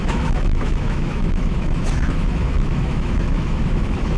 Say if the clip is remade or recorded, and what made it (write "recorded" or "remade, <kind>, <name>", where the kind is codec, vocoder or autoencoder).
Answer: remade, autoencoder, DAC-VAE